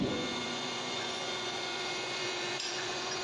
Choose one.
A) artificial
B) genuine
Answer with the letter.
A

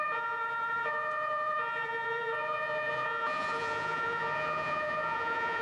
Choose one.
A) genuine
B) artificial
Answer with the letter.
B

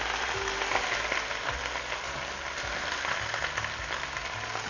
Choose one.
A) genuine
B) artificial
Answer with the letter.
A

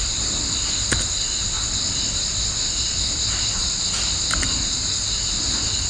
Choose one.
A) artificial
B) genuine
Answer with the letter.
B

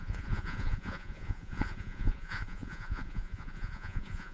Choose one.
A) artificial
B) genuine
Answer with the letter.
A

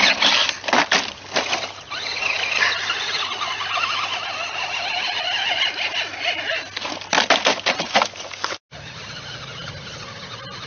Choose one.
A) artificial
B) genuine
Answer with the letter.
B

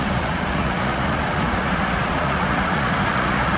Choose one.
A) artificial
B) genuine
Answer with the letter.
A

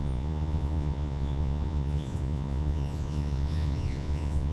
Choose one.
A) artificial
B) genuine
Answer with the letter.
A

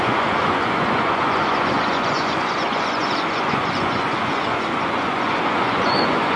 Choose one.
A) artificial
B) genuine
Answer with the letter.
A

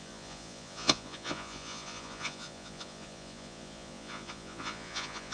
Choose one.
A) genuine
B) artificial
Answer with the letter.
B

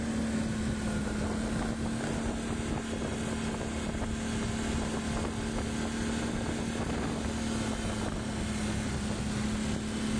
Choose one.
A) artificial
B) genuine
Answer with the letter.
B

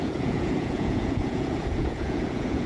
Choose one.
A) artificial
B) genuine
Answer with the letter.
A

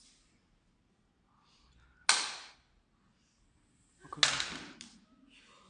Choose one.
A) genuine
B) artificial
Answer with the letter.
A